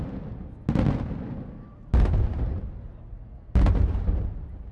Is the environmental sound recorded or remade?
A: recorded